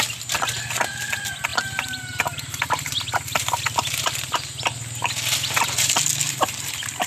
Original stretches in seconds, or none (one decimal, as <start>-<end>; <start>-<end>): 0.0-7.1